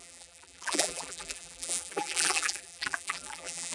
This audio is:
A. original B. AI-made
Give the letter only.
B